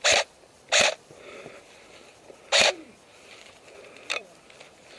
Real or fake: fake